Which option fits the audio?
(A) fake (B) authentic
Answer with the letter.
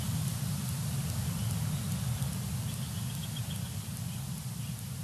A